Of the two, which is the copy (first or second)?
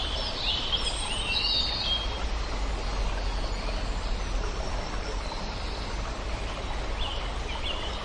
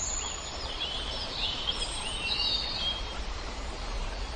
second